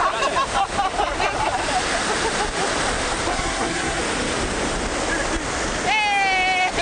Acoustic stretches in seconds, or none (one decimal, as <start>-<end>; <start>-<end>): 0.0-3.3; 4.0-6.8